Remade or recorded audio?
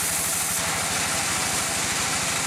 recorded